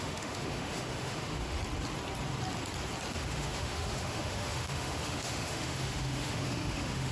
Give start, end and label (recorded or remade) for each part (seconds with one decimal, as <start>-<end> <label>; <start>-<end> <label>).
0.0-1.6 remade; 1.6-3.1 recorded; 3.1-7.1 remade